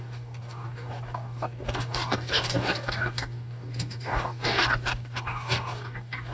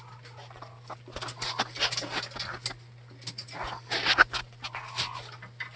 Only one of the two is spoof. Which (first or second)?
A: first